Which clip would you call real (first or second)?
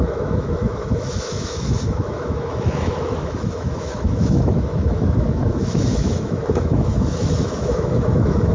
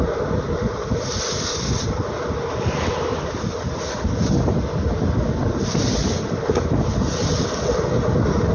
second